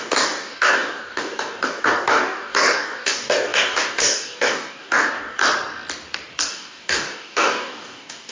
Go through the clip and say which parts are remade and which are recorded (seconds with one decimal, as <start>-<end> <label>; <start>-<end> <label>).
0.0-5.4 remade; 5.4-6.5 recorded; 6.5-8.3 remade